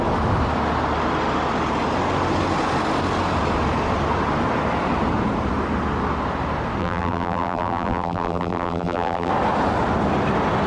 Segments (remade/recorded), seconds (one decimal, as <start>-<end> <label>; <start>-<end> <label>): 0.0-6.8 recorded; 6.8-9.3 remade; 9.3-10.7 recorded